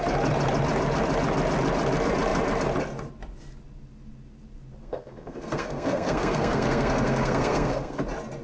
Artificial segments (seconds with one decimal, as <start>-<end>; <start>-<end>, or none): 4.8-8.0